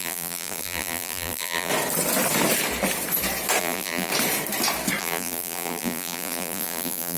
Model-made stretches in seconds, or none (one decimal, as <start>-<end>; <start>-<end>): 0.0-1.7; 3.6-4.1; 5.0-7.2